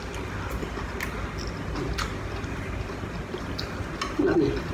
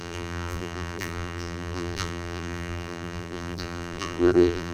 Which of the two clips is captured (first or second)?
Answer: first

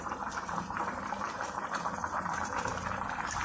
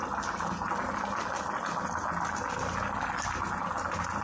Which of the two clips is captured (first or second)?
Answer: second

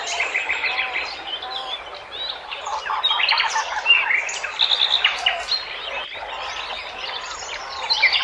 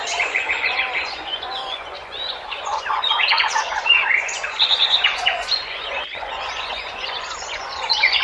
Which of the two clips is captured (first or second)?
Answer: first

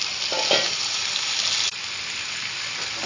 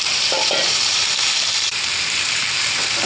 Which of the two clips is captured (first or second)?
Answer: first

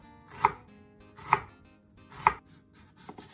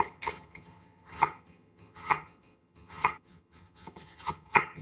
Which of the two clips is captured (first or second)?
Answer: first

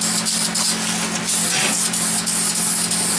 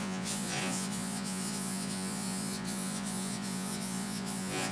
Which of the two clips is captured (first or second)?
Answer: first